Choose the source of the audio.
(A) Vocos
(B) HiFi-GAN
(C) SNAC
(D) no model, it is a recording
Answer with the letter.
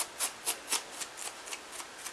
D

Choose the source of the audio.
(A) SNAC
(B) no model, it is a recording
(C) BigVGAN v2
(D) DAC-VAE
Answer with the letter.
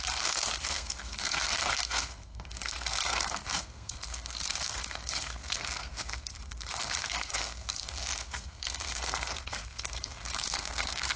A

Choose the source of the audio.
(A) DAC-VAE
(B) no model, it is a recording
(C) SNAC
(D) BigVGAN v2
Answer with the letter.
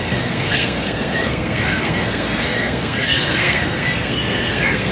C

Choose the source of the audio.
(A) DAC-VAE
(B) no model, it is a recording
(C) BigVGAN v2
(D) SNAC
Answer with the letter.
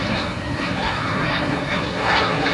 D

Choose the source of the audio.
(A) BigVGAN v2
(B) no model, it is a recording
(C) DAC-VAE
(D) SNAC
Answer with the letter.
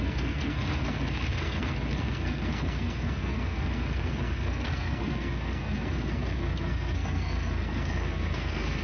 D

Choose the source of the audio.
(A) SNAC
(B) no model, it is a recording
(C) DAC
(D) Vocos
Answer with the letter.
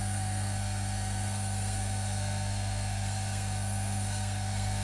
A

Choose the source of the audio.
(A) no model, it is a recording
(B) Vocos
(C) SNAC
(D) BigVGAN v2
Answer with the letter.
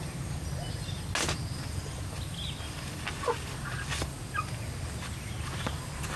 A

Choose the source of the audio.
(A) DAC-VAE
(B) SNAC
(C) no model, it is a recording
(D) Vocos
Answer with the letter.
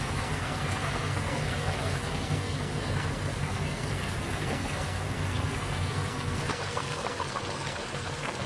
B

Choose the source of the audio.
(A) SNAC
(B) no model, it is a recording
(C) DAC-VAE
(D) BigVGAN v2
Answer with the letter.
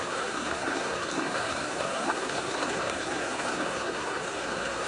A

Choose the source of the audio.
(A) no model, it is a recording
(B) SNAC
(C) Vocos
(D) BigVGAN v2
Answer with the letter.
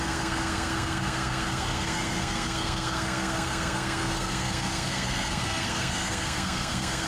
B